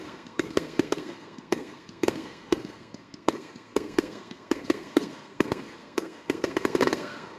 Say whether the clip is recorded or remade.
remade